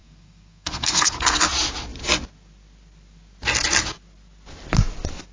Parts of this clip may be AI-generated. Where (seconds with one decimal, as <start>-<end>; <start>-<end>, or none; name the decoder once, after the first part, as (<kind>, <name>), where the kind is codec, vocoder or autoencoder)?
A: 0.0-1.2 (codec, SNAC)